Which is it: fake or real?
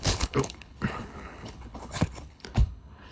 fake